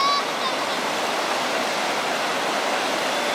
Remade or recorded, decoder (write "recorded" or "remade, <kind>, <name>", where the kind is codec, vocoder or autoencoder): recorded